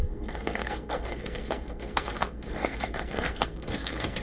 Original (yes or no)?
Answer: no